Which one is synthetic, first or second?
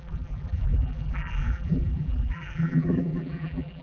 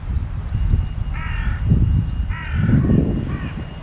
first